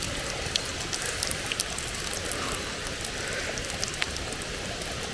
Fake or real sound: real